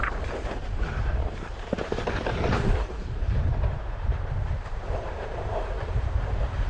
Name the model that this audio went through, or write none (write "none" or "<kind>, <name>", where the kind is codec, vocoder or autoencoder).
vocoder, BigVGAN v2